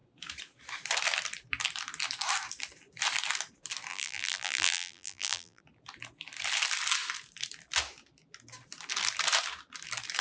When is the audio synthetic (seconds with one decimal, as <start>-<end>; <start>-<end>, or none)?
3.9-5.6